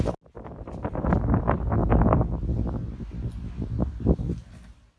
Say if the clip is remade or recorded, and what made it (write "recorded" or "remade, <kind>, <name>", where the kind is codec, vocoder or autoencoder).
recorded